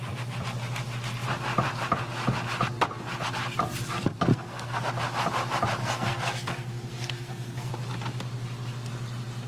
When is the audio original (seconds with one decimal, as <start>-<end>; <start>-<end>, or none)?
0.0-4.3; 4.9-5.8; 7.7-9.5